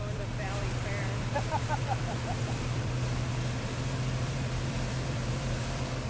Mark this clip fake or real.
fake